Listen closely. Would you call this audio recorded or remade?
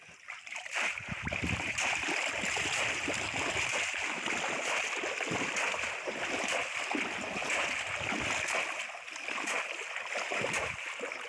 recorded